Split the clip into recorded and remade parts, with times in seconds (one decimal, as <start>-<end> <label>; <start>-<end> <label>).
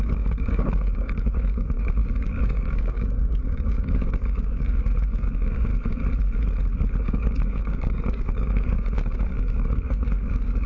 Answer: 0.0-5.7 remade; 5.7-7.0 recorded; 7.0-10.7 remade